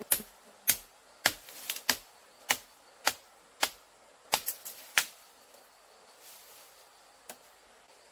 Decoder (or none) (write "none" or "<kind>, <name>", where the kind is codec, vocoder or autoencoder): none